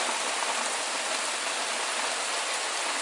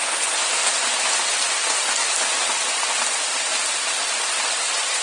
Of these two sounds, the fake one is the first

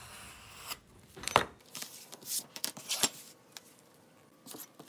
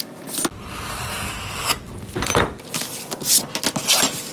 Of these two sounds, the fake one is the first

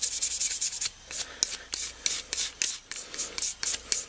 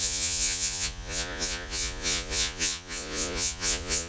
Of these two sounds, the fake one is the second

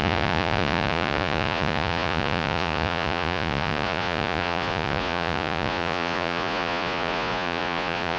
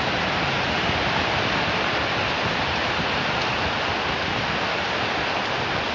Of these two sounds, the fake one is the first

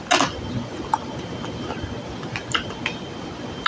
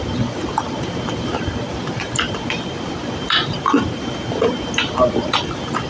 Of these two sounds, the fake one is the second